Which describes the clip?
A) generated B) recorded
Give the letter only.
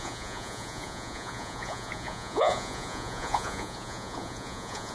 A